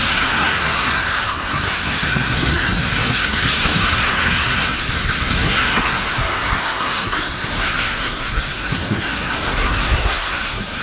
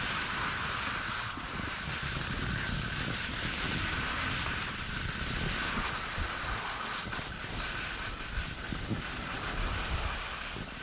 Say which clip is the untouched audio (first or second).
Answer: second